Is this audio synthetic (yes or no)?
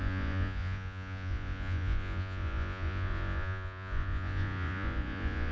yes